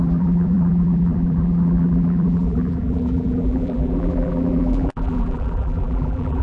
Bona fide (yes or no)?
no